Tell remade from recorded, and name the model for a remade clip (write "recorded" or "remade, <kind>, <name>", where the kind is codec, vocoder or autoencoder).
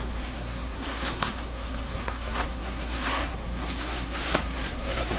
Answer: remade, codec, SNAC